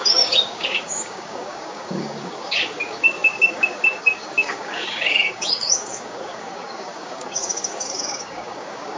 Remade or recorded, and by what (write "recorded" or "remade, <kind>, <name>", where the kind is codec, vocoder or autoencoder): remade, codec, DAC